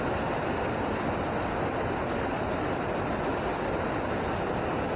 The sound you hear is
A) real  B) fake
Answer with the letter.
A